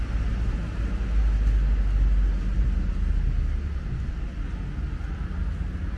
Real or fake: real